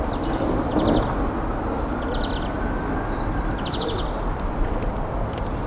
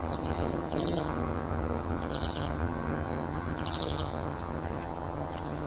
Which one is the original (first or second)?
first